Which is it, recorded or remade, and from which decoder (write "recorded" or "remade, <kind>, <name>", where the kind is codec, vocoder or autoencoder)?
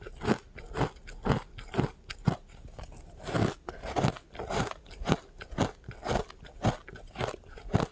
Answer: recorded